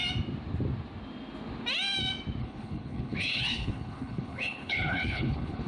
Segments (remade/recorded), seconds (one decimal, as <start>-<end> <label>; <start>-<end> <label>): 0.0-2.4 recorded; 2.4-5.7 remade